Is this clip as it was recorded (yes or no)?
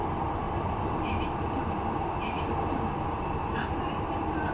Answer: yes